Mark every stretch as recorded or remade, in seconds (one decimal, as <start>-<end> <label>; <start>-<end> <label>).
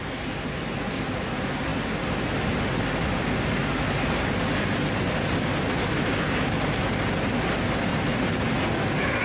0.0-7.9 recorded; 7.9-8.5 remade; 8.5-9.2 recorded